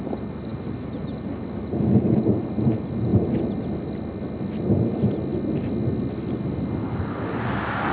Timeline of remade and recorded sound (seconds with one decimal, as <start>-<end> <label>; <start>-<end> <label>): 0.0-7.9 recorded